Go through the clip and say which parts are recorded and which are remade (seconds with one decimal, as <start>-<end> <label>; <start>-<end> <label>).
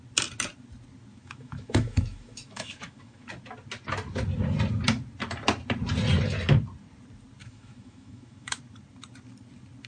0.0-1.1 recorded; 1.1-3.3 remade; 3.3-7.4 recorded; 7.4-8.6 remade; 8.6-9.9 recorded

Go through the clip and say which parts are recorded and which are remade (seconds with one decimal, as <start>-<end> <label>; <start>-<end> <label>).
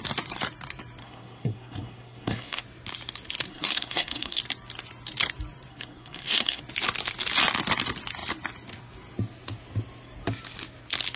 0.0-1.0 recorded; 1.0-2.6 remade; 2.6-3.5 recorded; 3.5-4.4 remade; 4.4-5.7 recorded; 5.7-6.6 remade; 6.6-11.2 recorded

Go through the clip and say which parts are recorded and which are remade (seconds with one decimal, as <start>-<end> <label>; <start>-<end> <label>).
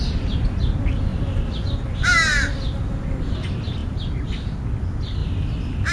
0.0-5.9 recorded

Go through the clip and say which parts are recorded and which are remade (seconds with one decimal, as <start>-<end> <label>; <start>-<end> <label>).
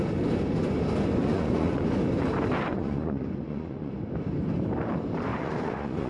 0.0-1.2 recorded; 1.2-1.8 remade; 1.8-2.7 recorded; 2.7-3.9 remade; 3.9-5.3 recorded; 5.3-6.1 remade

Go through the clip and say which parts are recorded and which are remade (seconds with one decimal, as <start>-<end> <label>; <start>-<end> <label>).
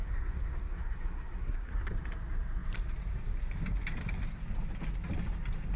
0.0-1.9 remade; 1.9-5.8 recorded